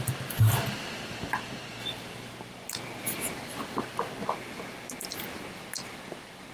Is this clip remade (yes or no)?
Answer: no